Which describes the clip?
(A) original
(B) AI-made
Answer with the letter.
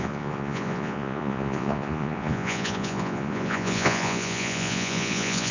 B